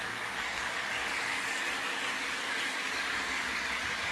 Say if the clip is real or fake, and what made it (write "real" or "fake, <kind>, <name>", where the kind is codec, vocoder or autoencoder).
fake, codec, DAC